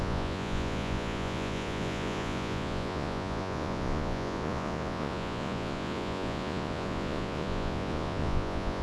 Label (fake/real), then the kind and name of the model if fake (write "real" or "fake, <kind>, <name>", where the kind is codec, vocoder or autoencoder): fake, vocoder, Vocos